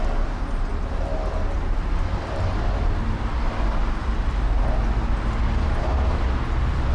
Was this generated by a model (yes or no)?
no